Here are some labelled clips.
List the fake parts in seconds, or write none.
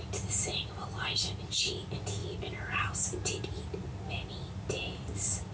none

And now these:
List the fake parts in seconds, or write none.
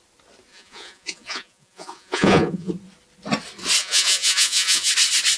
0.5-2.7 (vocoder, Vocos); 3.8-4.9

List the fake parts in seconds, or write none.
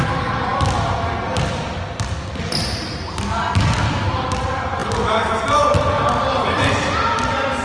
none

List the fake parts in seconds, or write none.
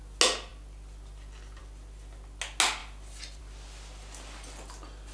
none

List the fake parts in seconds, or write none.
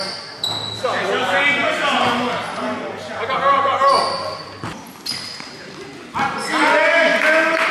none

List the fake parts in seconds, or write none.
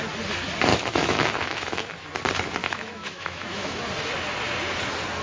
0.7-1.8 (autoencoder, DAC-VAE); 2.6-3.8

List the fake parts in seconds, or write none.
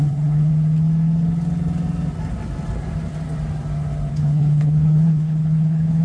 0.0-0.5 (codec, HILCodec); 4.1-6.0